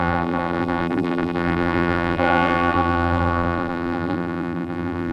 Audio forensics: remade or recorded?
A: remade